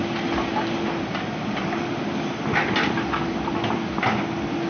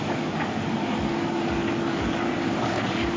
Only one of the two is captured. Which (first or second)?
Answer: first